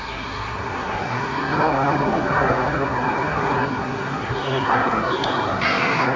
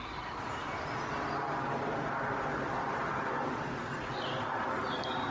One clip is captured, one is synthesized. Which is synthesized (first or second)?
first